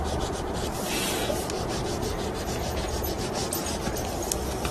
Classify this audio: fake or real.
real